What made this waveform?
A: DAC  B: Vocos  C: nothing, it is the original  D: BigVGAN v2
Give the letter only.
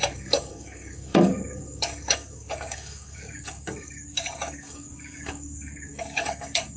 A